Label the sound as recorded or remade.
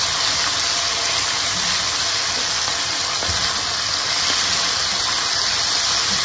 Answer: recorded